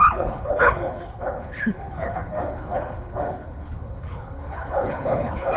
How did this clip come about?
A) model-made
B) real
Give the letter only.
A